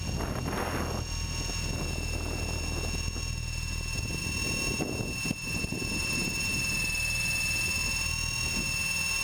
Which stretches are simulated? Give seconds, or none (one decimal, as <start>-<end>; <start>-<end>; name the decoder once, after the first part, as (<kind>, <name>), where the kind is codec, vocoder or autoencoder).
5.4-6.5 (vocoder, BigVGAN v2)